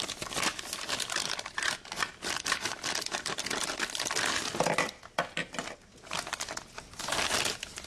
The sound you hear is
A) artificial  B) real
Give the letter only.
B